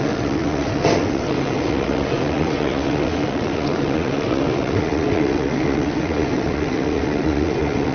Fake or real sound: fake